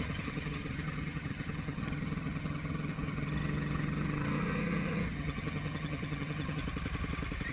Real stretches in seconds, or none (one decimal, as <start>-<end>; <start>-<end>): 6.6-7.5